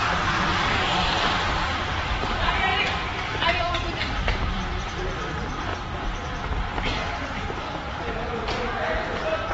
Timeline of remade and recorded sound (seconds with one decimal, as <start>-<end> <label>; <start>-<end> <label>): 0.0-5.7 remade; 5.7-7.6 recorded; 7.6-9.5 remade